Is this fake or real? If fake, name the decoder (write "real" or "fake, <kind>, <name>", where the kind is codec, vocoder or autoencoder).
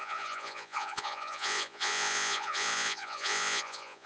fake, vocoder, Vocos